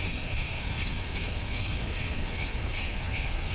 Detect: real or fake fake